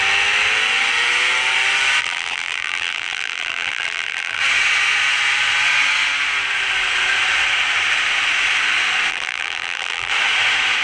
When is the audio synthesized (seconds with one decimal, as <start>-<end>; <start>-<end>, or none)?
2.0-4.4; 9.1-10.1